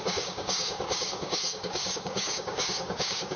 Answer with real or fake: fake